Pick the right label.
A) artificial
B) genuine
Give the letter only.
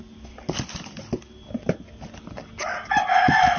B